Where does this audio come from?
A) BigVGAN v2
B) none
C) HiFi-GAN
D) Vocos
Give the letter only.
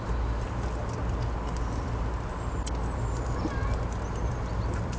B